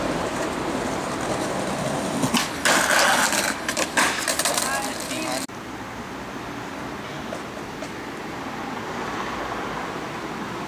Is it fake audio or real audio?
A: real